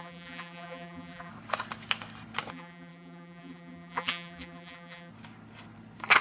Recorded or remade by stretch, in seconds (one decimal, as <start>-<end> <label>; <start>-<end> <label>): 0.0-1.3 remade; 1.3-2.5 recorded; 2.5-5.1 remade; 5.1-6.2 recorded